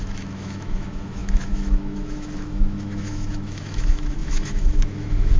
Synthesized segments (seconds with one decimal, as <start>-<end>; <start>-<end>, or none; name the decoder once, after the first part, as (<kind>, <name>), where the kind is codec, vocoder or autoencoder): 0.0-5.4 (autoencoder, DAC-VAE)